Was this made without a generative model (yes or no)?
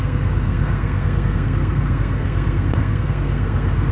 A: no